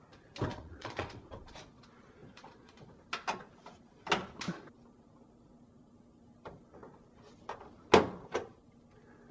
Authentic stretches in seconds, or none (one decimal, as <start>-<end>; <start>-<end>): 0.0-0.5; 1.8-2.2; 2.9-9.3